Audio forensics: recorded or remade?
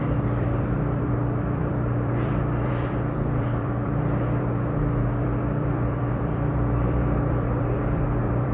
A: remade